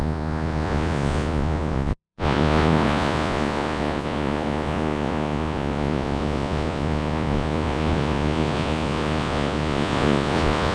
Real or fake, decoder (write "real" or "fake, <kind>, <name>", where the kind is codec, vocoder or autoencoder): fake, vocoder, Vocos